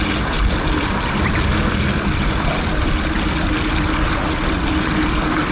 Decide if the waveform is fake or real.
real